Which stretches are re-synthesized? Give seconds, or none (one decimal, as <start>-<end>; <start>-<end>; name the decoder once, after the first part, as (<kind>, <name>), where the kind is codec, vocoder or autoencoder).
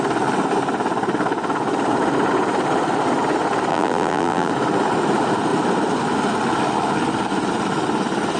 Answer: 3.7-4.5 (vocoder, BigVGAN v2)